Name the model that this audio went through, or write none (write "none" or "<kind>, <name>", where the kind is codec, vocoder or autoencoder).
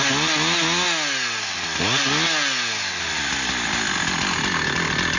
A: none